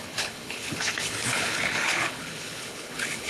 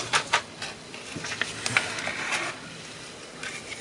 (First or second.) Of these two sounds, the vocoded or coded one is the first